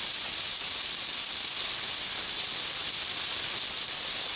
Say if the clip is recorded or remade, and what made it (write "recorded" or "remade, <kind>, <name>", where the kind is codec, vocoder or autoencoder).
recorded